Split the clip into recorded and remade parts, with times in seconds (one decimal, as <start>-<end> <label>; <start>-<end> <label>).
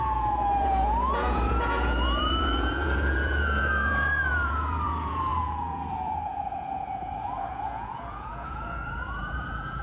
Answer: 0.0-9.8 remade